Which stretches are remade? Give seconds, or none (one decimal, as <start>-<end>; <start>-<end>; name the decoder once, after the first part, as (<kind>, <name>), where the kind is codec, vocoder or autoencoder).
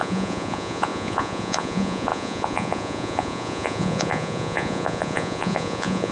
0.0-6.1 (vocoder, Vocos)